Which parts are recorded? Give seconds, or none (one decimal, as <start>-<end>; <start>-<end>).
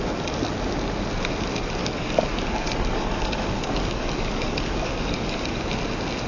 0.0-1.8; 5.6-6.3